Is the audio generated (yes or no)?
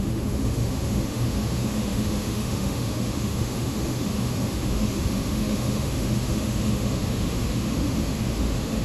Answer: yes